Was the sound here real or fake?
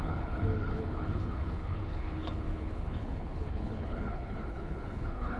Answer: fake